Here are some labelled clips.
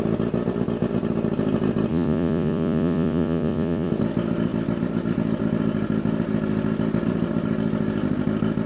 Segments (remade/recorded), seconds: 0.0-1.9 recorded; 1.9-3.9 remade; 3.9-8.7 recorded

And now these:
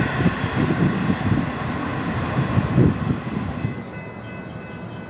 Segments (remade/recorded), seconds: 0.0-5.1 recorded